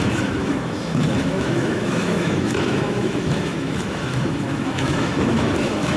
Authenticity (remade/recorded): remade